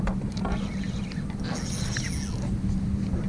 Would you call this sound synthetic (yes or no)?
no